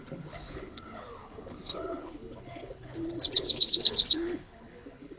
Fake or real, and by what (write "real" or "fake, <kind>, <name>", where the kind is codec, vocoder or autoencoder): fake, codec, HILCodec